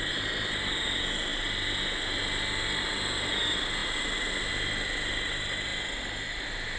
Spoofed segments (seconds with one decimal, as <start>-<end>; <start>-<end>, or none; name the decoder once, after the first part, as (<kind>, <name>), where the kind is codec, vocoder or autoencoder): none